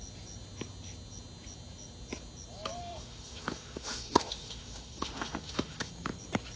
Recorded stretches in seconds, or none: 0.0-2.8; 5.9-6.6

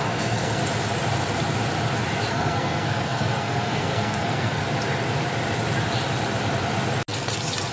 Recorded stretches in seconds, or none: 0.6-2.3; 4.6-7.7

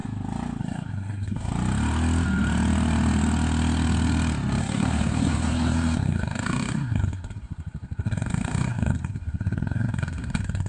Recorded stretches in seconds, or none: 0.0-0.6; 1.5-4.6